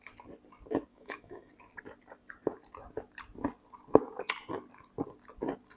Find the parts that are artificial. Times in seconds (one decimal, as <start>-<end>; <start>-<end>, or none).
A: 0.9-1.5